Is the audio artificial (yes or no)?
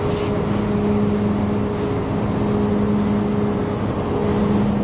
no